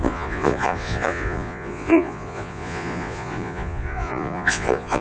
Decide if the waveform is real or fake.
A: fake